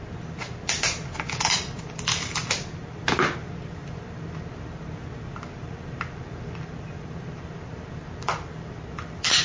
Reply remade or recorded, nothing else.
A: remade